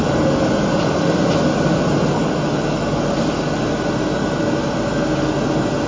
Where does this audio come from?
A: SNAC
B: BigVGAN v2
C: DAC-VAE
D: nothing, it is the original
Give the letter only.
D